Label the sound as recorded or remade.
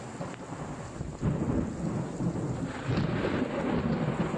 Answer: recorded